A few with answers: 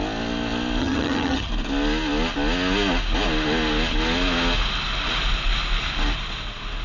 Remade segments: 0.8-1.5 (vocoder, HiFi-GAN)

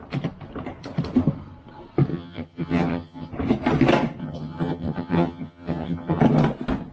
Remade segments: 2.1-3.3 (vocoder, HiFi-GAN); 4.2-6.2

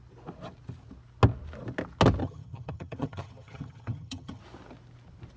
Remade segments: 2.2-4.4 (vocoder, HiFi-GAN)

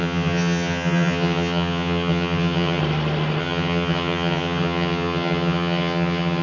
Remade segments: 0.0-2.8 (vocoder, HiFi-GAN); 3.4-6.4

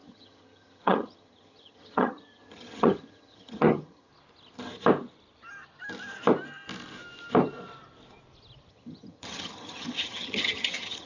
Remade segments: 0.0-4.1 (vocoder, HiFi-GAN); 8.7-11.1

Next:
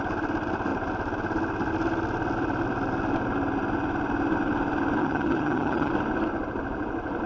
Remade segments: 5.0-5.9 (vocoder, HiFi-GAN)

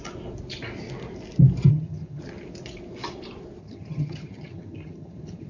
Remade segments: 1.7-2.2 (vocoder, HiFi-GAN); 3.6-5.5